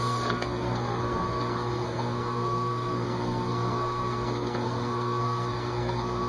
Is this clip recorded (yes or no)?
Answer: no